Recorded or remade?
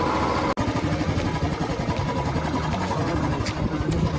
recorded